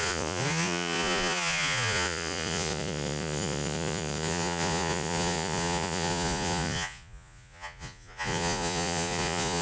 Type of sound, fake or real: fake